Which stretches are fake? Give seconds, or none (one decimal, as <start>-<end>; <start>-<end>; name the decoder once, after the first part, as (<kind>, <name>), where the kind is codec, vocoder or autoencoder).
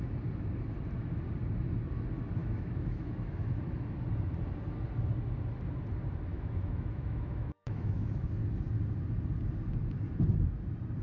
2.4-3.3 (autoencoder, DAC-VAE); 6.3-8.3